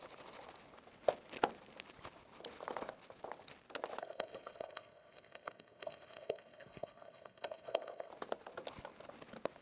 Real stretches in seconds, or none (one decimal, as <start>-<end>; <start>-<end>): 0.0-4.0; 8.1-9.6